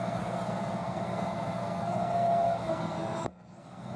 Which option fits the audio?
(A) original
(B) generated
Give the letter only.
B